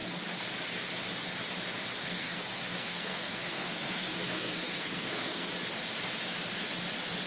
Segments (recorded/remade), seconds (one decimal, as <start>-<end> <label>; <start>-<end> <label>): 0.0-2.0 recorded; 2.0-5.5 remade; 5.5-7.3 recorded